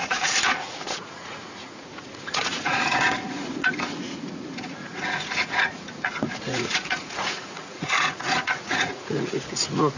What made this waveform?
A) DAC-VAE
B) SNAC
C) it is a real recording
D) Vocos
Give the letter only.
D